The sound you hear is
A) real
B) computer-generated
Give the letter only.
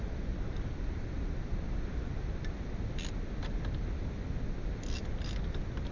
A